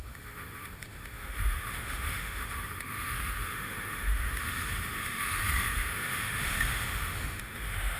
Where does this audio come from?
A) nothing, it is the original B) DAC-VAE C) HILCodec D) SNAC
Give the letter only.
B